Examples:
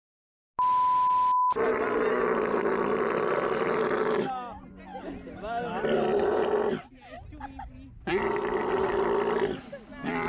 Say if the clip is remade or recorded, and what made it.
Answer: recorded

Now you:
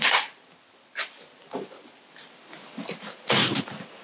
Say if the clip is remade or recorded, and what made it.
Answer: recorded